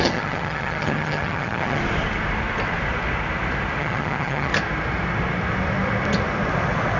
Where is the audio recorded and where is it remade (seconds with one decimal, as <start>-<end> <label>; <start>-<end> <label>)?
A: 0.0-1.8 remade; 1.8-3.8 recorded; 3.8-4.5 remade; 4.5-7.0 recorded